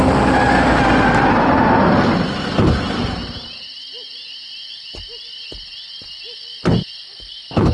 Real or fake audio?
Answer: real